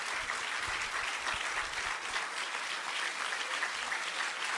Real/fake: real